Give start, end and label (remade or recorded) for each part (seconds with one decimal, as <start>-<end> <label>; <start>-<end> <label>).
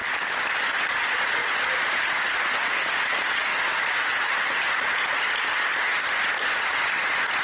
0.0-0.9 recorded; 0.9-1.4 remade; 1.4-2.4 recorded; 2.4-3.5 remade; 3.5-7.4 recorded